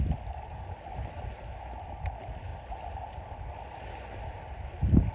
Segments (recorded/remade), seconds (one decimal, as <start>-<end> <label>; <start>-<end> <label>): 0.0-5.1 recorded

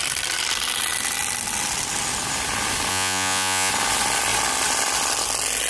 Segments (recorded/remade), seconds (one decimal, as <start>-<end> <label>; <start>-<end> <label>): 0.0-2.9 recorded; 2.9-3.7 remade; 3.7-5.7 recorded

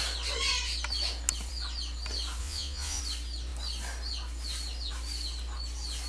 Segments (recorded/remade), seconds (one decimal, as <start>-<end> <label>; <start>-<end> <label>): 0.0-2.4 recorded; 2.4-3.0 remade; 3.0-6.1 recorded

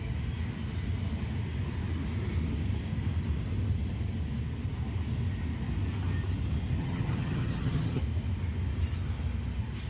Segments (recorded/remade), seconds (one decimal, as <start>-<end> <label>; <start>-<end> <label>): 0.0-6.8 recorded; 6.8-8.0 remade; 8.0-9.9 recorded